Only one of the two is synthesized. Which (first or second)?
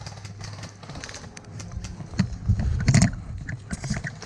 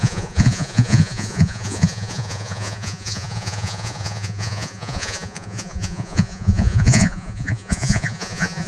second